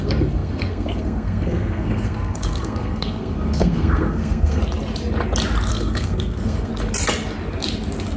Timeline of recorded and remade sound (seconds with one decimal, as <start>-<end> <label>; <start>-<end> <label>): 0.0-4.6 remade; 4.6-5.7 recorded; 5.7-6.7 remade; 6.7-8.2 recorded